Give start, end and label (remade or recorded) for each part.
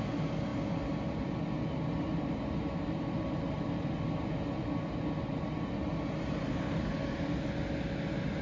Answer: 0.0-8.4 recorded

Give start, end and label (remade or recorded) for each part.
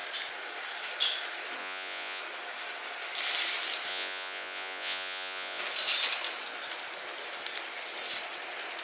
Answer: 0.0-1.6 recorded; 1.6-2.2 remade; 2.2-3.9 recorded; 3.9-5.6 remade; 5.6-8.8 recorded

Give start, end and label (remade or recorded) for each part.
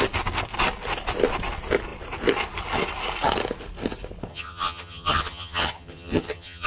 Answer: 0.0-4.3 recorded; 4.3-6.7 remade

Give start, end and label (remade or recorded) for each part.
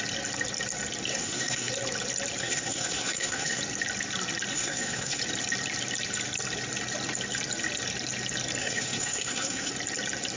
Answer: 0.0-1.1 recorded; 1.1-1.7 remade; 1.7-2.4 recorded; 2.4-3.6 remade; 3.6-4.5 recorded; 4.5-5.2 remade; 5.2-8.6 recorded; 8.6-9.7 remade; 9.7-10.4 recorded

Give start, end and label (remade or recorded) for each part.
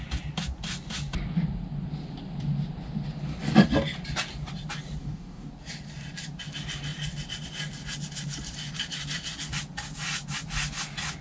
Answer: 0.0-5.0 recorded; 5.0-5.5 remade; 5.5-11.2 recorded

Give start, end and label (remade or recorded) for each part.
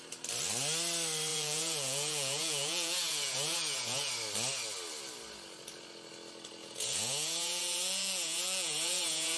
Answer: 0.0-1.3 recorded; 1.3-4.1 remade; 4.1-6.6 recorded; 6.6-9.4 remade